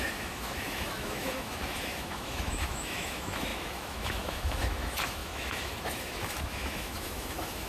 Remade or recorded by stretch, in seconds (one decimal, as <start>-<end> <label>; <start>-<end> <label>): 0.0-7.7 remade